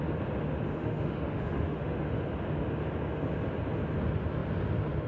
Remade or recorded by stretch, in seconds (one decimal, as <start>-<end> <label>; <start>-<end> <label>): 0.0-0.8 recorded; 0.8-2.2 remade; 2.2-5.1 recorded